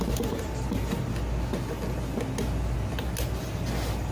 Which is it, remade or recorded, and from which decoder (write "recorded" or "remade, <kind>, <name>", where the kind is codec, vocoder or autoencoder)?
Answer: recorded